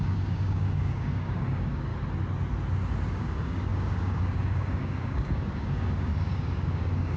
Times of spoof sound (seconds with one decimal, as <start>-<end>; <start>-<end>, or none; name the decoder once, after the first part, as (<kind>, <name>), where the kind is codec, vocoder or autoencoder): 0.0-1.9 (codec, DAC); 3.1-7.2